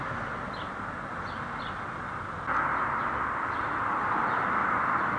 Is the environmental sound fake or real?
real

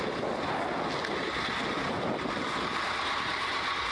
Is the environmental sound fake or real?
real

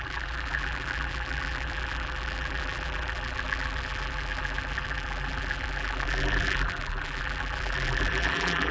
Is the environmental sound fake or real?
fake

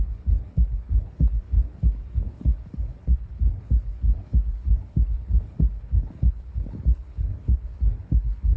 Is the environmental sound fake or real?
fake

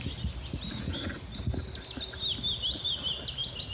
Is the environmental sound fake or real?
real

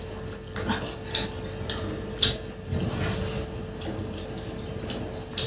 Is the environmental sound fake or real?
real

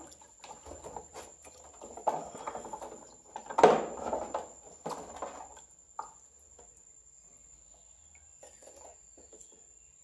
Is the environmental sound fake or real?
real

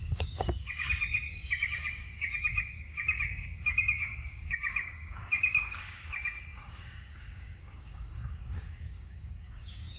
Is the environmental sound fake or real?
fake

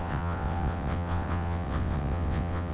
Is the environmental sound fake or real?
fake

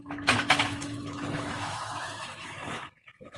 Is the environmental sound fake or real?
fake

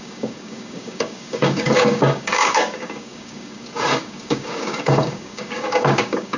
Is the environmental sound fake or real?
fake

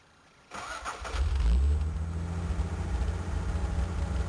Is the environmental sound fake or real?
real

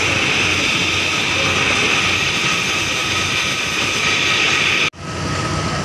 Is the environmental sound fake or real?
real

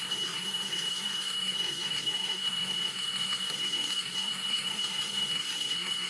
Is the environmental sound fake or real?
fake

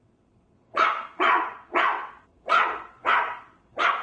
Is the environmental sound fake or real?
fake